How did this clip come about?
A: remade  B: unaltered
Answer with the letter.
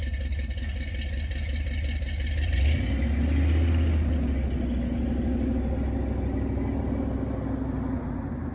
B